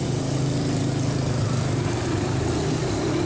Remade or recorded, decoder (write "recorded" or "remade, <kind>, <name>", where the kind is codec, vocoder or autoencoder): recorded